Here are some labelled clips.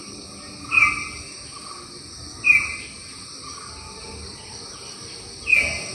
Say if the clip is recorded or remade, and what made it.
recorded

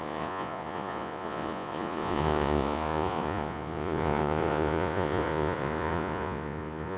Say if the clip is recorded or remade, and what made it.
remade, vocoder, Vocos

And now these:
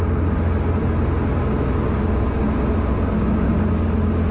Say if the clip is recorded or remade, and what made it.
recorded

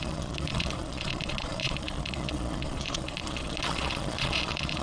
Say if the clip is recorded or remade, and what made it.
remade, vocoder, Vocos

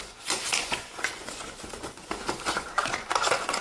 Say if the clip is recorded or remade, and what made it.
remade, vocoder, Vocos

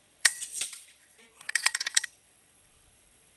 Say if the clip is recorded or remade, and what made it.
remade, vocoder, Vocos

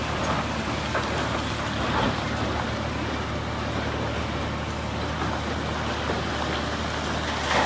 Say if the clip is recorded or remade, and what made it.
recorded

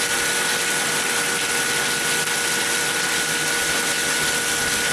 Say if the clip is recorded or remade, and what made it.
recorded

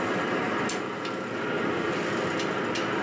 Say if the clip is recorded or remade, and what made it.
recorded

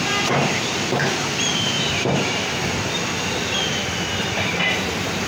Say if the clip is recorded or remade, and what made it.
recorded